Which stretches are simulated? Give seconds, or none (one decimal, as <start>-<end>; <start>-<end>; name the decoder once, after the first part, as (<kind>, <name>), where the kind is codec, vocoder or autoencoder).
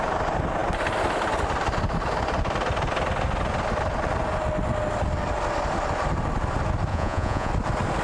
6.9-7.5 (vocoder, Vocos)